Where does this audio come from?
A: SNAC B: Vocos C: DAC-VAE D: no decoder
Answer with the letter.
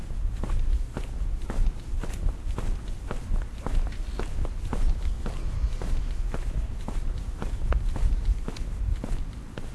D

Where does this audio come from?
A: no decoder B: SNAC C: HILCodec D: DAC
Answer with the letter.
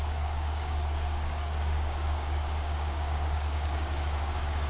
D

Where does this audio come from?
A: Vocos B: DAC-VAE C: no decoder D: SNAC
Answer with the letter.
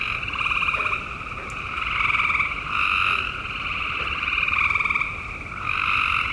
C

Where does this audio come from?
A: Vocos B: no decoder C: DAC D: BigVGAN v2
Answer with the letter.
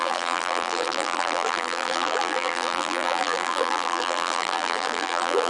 D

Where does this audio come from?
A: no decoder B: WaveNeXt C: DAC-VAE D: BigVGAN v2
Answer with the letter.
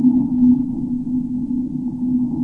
A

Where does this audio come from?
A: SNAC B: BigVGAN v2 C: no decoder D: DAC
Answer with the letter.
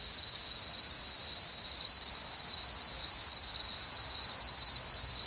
C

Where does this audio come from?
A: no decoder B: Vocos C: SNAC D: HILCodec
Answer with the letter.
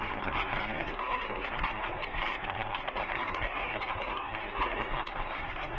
C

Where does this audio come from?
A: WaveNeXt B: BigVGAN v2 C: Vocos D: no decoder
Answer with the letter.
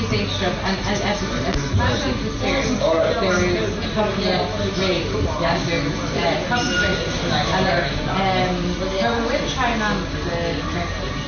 D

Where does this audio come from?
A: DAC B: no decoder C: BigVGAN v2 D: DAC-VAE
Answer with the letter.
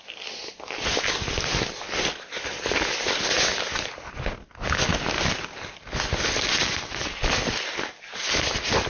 B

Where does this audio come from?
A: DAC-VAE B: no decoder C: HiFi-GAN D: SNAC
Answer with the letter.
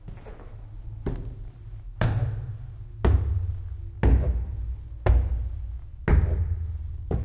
B